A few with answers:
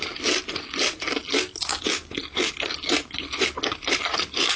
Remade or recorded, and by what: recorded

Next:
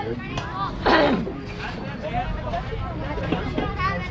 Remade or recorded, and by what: recorded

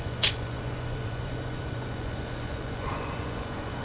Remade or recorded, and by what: remade, vocoder, Vocos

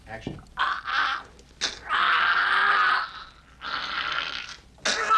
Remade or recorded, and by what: recorded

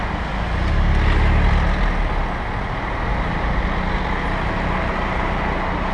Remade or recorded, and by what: recorded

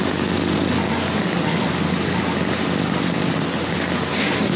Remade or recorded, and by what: recorded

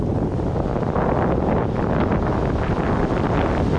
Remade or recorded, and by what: recorded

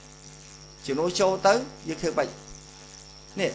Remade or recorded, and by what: recorded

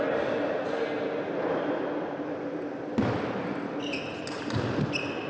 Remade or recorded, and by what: recorded